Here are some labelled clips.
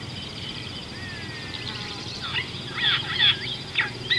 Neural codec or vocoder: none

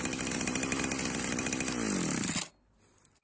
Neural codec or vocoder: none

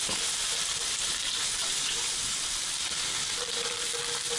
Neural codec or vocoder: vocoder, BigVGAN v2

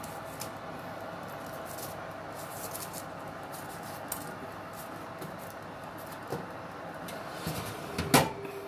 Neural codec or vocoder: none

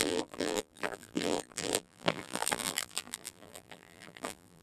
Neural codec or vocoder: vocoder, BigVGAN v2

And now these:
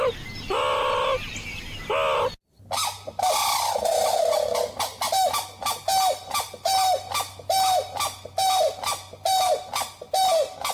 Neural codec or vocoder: none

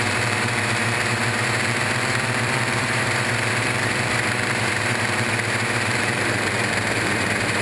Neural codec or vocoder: vocoder, BigVGAN v2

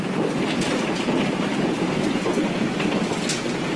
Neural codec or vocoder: none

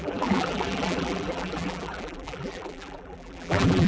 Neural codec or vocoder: vocoder, BigVGAN v2